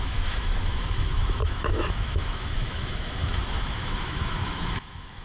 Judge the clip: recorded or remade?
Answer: remade